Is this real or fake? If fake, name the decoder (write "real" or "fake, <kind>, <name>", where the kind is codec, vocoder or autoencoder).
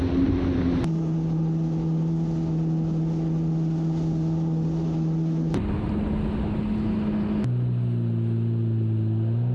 real